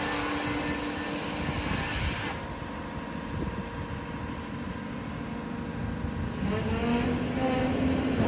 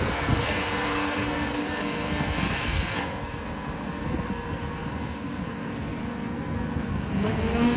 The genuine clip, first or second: first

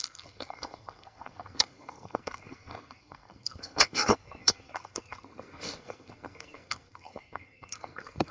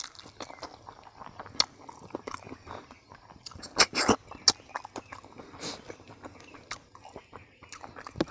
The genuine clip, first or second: second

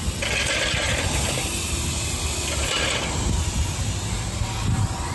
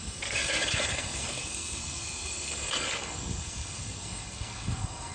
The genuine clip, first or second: first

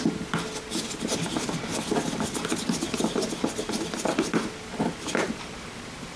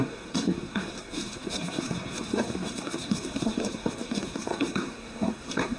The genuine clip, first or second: first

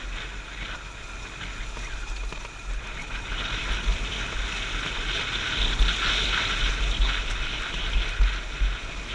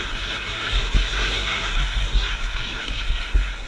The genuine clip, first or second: first